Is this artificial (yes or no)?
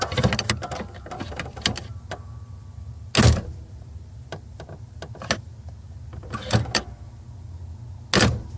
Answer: no